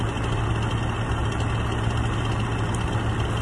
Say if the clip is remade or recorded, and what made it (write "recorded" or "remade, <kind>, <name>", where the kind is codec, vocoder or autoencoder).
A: recorded